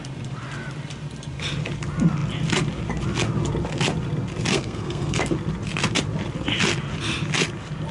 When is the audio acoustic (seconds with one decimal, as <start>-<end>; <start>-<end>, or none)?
0.0-4.5; 5.2-7.9